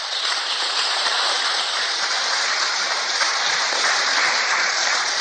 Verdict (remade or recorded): remade